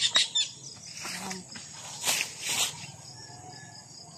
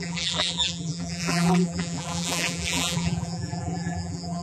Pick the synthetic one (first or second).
second